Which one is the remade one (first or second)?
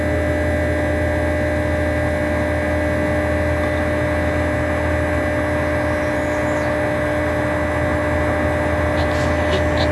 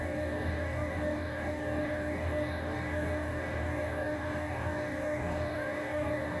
second